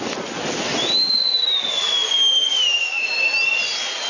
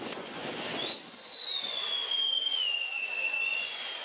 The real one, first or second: first